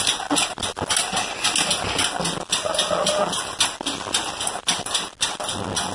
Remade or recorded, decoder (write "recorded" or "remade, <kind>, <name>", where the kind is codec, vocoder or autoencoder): recorded